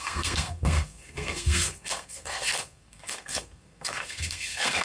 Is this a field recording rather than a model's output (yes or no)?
no